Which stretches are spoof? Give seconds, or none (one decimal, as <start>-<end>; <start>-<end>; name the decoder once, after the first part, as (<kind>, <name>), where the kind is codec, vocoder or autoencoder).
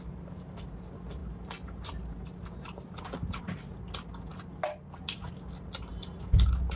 1.2-3.4 (vocoder, BigVGAN v2)